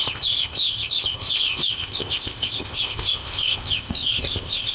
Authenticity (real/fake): fake